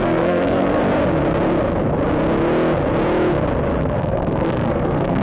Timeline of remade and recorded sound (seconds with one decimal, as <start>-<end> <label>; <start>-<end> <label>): 0.0-0.8 remade; 0.8-3.8 recorded; 3.8-5.2 remade